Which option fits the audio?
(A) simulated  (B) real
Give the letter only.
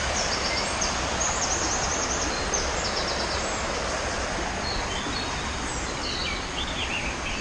B